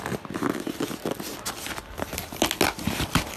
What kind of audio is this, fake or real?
real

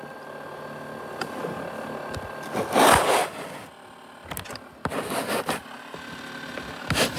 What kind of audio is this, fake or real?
real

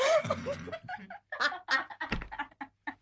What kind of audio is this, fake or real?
real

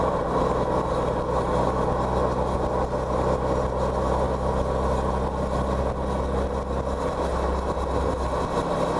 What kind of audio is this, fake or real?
real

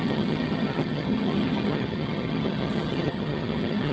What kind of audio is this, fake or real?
fake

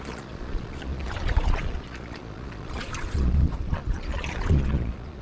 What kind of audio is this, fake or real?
fake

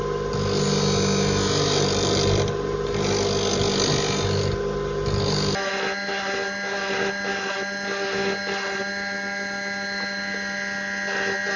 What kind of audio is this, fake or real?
real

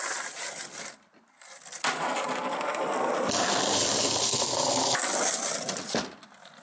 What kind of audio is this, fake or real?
real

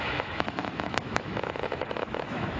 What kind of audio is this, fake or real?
fake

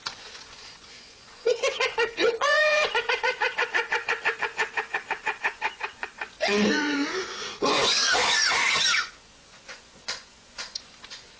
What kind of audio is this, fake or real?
fake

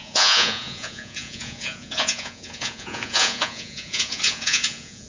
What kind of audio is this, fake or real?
fake